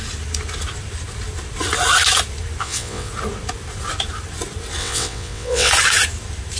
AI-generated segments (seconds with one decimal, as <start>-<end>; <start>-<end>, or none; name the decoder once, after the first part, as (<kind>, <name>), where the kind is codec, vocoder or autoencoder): 2.6-3.1 (vocoder, WaveNeXt); 4.8-5.7